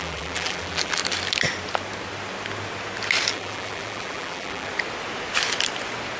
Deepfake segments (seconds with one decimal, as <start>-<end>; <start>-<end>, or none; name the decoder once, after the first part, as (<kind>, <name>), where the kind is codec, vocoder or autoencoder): 0.0-1.0 (vocoder, BigVGAN v2); 3.3-4.7